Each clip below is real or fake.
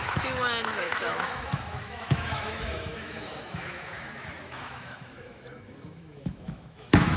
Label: fake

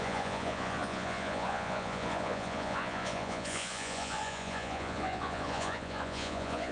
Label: fake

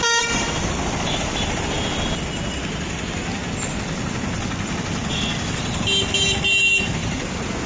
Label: real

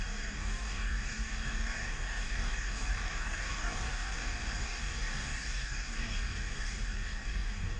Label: fake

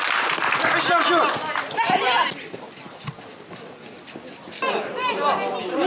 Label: real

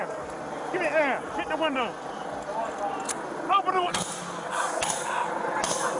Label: real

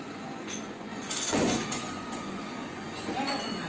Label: fake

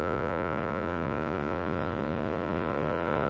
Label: fake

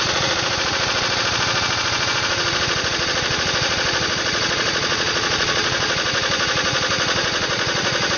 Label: fake